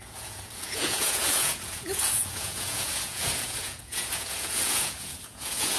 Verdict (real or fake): fake